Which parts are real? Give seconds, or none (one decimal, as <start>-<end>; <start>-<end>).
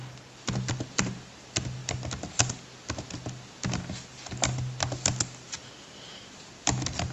0.0-7.1